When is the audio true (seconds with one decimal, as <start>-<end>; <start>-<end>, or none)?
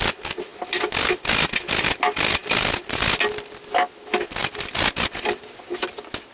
0.0-6.3